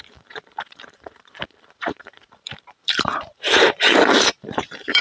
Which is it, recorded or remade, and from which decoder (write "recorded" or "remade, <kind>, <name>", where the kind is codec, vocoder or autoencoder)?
remade, vocoder, BigVGAN v2